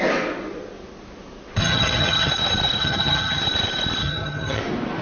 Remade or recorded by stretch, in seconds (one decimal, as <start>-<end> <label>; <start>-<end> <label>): 0.0-1.6 recorded; 1.6-2.3 remade; 2.3-2.8 recorded; 2.8-3.4 remade; 3.4-4.0 recorded; 4.0-4.6 remade; 4.6-5.0 recorded